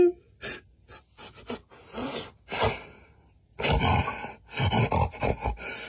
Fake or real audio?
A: real